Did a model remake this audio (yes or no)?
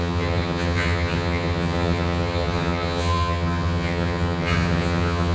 yes